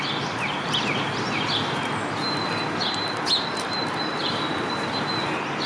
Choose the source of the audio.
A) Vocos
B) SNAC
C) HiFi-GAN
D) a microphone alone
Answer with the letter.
D